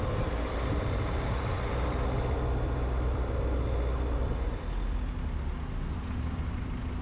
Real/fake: real